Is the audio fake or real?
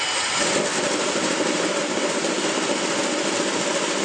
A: real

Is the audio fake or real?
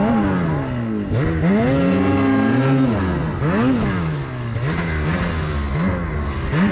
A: real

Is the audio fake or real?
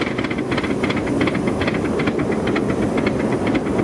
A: real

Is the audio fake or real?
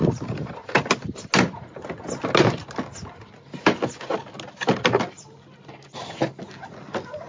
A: real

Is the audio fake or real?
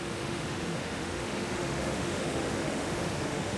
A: fake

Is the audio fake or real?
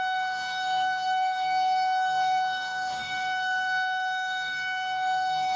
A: fake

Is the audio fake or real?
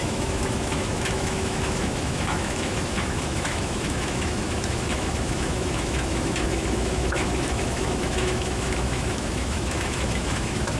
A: fake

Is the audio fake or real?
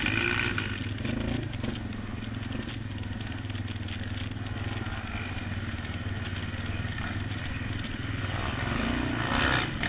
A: real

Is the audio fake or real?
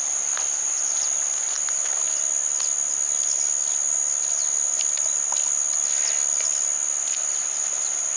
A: real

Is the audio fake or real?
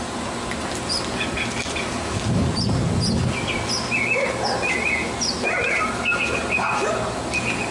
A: real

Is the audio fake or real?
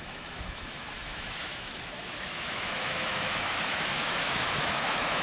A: fake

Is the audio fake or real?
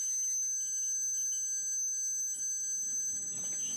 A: real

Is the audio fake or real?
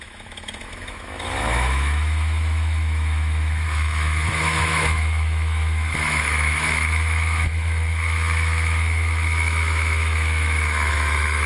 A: fake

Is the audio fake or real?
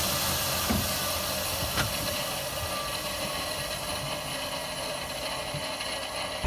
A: real